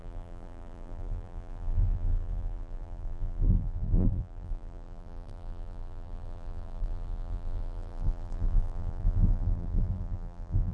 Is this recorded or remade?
remade